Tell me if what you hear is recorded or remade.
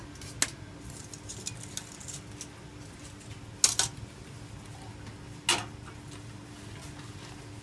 recorded